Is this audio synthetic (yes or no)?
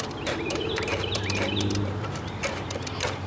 yes